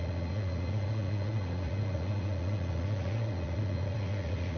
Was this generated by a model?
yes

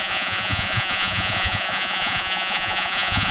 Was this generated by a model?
yes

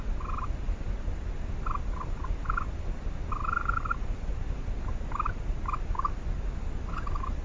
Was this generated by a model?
no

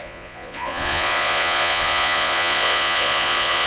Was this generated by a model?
yes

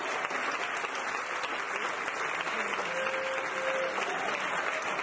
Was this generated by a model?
no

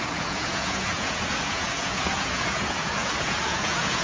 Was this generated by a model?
yes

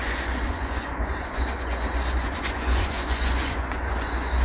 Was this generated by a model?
yes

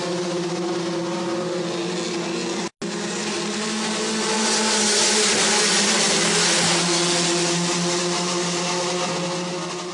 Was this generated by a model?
no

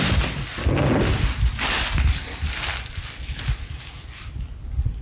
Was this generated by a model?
no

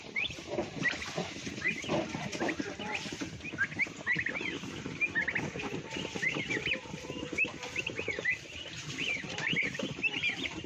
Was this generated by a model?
no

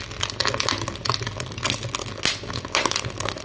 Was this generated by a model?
no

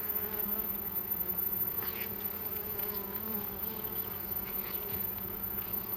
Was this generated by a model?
yes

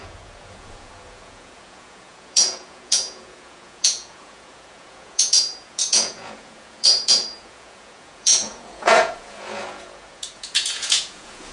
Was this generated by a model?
yes